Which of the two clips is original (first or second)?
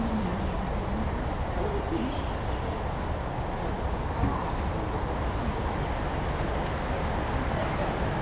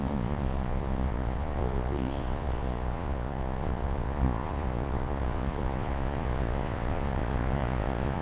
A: first